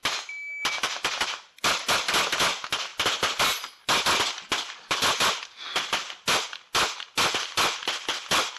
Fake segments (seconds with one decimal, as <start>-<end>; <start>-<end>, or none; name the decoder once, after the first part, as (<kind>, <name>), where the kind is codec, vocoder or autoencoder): none